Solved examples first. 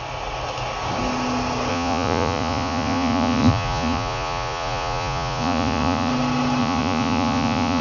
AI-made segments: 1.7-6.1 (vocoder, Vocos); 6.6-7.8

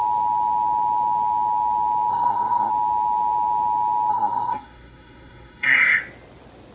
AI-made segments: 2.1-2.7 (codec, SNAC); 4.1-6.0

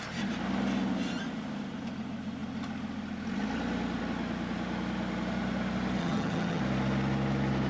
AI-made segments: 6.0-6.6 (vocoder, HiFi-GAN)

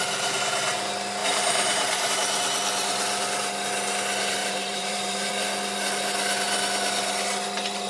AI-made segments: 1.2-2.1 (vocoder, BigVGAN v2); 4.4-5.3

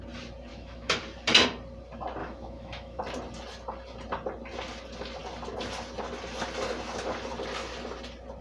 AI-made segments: 0.5-1.0 (autoencoder, DAC-VAE); 2.2-3.0

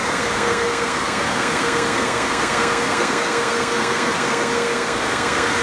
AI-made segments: 0.0-5.6 (codec, SNAC)

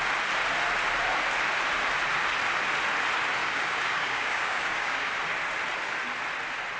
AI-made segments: 3.4-5.1 (codec, DAC)